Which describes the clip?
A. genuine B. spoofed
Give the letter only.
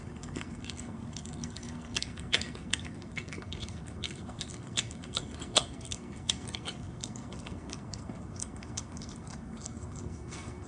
B